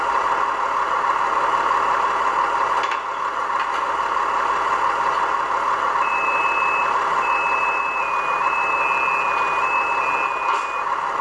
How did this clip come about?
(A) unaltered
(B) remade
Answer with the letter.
A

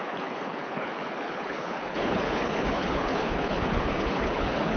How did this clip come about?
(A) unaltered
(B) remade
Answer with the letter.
B